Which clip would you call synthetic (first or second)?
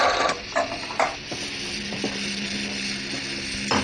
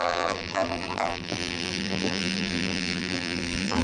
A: second